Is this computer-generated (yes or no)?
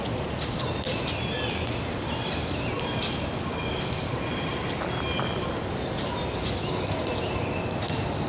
no